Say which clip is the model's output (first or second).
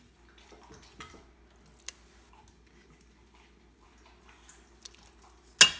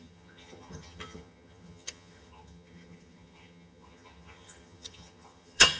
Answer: second